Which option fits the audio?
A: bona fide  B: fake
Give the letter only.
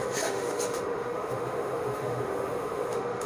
B